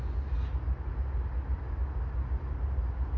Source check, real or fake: real